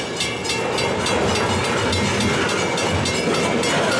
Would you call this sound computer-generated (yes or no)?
no